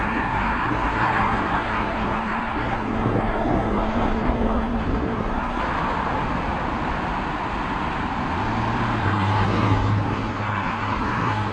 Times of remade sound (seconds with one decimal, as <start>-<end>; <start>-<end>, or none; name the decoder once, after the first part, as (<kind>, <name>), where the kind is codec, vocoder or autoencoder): 0.0-5.6 (codec, SNAC); 9.0-11.5